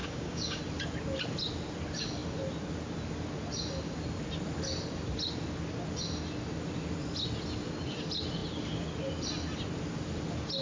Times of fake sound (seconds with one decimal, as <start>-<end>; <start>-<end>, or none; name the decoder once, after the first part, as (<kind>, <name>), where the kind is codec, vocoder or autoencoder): 0.0-0.6 (codec, DAC)